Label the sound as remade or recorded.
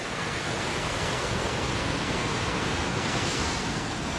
remade